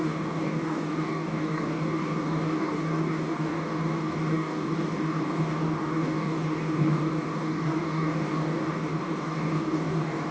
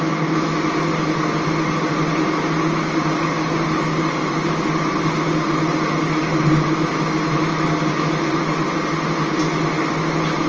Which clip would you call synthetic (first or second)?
first